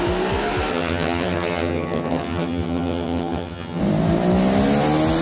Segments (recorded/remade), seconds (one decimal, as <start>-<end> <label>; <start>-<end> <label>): 0.0-0.7 recorded; 0.7-3.8 remade; 3.8-5.2 recorded